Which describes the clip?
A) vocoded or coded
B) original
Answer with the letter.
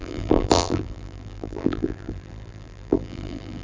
A